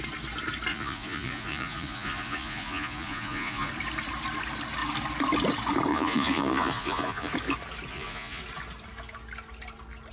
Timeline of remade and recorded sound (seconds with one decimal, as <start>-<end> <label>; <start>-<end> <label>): 0.0-0.7 recorded; 0.7-3.7 remade; 3.7-5.9 recorded; 5.9-7.3 remade; 7.3-7.9 recorded; 7.9-8.4 remade; 8.4-10.1 recorded